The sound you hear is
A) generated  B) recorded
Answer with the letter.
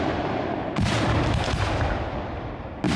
B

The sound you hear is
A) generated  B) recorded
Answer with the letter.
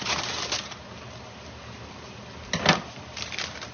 B